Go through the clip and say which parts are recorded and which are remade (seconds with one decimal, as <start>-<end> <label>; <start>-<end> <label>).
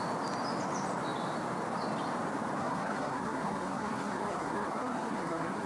0.0-2.6 recorded; 2.6-5.7 remade